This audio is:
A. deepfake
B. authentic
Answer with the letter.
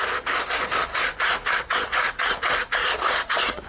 B